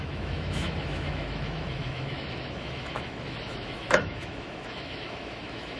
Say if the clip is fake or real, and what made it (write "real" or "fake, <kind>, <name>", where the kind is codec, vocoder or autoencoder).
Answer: fake, autoencoder, DAC-VAE